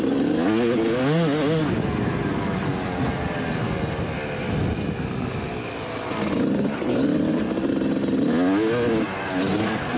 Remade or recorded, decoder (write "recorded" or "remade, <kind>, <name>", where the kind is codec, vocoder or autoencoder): recorded